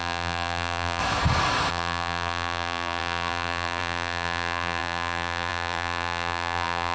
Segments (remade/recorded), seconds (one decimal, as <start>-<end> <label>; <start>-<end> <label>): 0.0-1.0 remade; 1.0-1.7 recorded; 1.7-6.9 remade